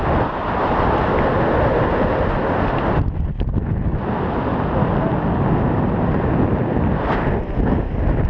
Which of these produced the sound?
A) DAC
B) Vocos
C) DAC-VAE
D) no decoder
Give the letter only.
D